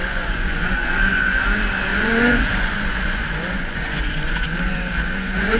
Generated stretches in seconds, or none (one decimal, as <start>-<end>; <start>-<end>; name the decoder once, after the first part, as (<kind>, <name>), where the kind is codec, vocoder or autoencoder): 0.0-1.4 (vocoder, Vocos); 1.9-5.6